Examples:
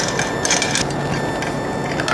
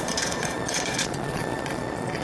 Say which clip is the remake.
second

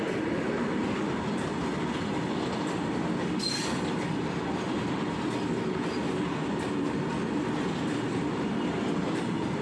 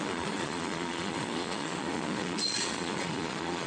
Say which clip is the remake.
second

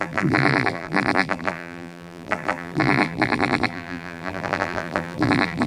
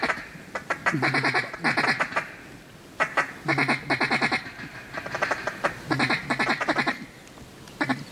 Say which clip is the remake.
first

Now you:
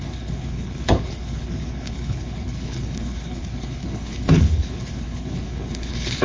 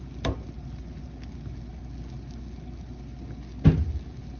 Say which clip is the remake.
first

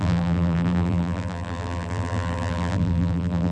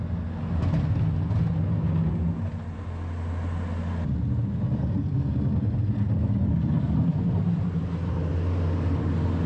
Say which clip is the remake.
first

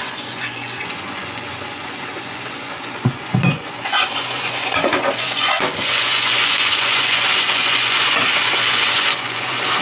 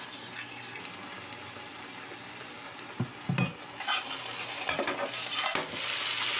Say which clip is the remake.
first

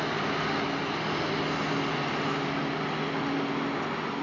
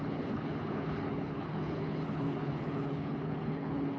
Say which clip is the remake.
second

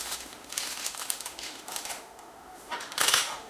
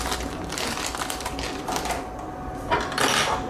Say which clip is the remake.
first